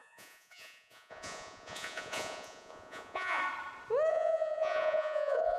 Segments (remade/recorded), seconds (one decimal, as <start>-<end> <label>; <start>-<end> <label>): 0.0-3.4 remade; 3.4-4.1 recorded; 4.1-5.6 remade